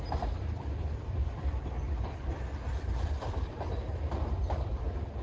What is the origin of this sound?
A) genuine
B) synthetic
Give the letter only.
B